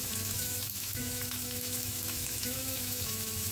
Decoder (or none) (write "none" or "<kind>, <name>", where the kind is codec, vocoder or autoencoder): autoencoder, DAC-VAE